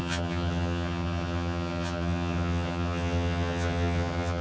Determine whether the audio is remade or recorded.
remade